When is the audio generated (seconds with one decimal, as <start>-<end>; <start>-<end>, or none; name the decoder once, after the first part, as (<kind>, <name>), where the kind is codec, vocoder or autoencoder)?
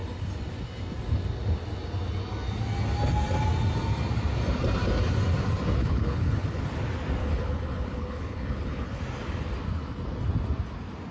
5.8-6.6 (codec, HILCodec); 7.2-9.0